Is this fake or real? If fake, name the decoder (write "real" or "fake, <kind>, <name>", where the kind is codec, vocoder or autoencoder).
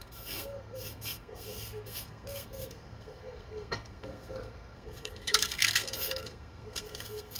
fake, codec, SNAC